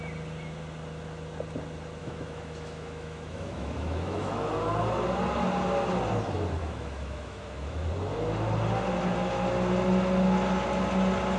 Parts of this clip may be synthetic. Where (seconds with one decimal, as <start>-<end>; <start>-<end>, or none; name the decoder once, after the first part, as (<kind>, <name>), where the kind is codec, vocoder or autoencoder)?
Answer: 2.0-4.5 (autoencoder, DAC-VAE); 6.6-7.9